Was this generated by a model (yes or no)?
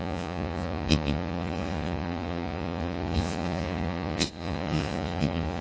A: yes